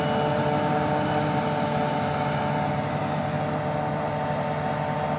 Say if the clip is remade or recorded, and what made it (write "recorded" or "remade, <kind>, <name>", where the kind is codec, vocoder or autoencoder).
recorded